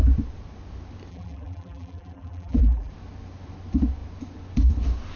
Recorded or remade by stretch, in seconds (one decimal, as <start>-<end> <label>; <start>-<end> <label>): 0.0-1.1 recorded; 1.1-2.9 remade; 2.9-5.2 recorded